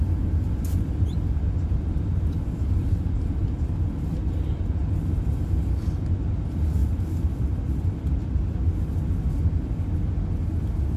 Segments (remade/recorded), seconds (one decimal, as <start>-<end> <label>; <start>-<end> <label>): 0.0-6.8 recorded; 6.8-9.1 remade; 9.1-11.0 recorded